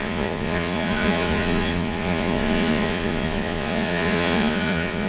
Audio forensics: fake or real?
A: fake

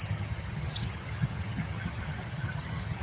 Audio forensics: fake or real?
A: fake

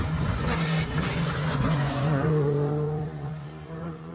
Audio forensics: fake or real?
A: fake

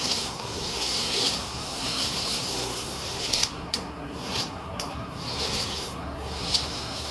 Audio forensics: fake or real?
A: fake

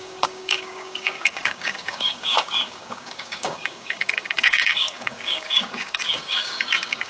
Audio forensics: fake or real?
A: fake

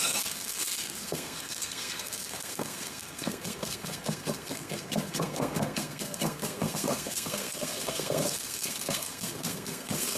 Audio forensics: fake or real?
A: fake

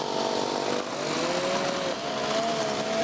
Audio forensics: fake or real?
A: real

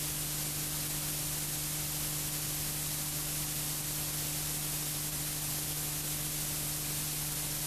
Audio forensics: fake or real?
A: real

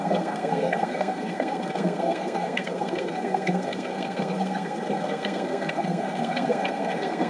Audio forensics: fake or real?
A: fake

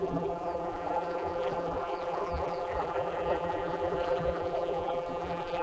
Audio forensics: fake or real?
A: fake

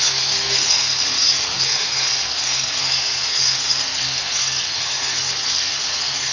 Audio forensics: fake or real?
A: fake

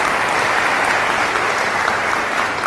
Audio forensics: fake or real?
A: real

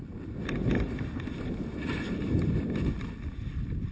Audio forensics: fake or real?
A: real